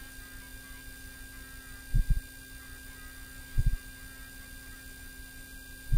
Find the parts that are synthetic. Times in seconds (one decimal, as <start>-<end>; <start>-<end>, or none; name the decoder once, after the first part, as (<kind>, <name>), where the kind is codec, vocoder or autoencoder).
none